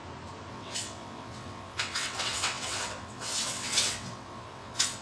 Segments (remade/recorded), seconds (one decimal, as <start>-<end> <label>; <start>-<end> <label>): 0.0-0.5 recorded; 0.5-5.0 remade